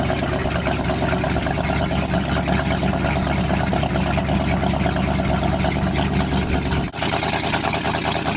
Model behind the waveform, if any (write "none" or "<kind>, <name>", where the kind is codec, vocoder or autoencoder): none